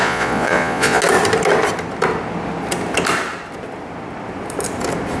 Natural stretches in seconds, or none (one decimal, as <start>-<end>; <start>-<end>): 1.0-5.2